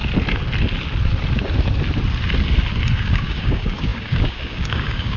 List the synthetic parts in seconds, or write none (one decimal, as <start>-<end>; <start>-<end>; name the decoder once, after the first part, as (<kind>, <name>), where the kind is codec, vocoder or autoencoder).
3.0-5.2 (codec, DAC)